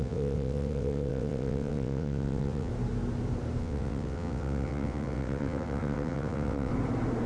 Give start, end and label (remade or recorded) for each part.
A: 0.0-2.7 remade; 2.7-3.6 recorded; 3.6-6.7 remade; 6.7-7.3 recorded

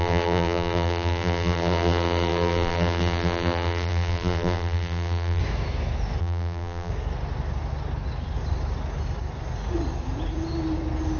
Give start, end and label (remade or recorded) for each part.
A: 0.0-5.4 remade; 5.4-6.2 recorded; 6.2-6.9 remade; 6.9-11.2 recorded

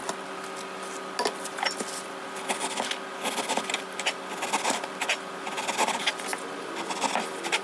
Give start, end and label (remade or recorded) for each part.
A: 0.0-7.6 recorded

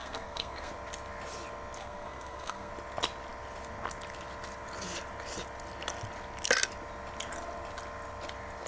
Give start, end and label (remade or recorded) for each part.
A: 0.0-0.7 remade; 0.7-1.8 recorded; 1.8-2.7 remade; 2.7-8.7 recorded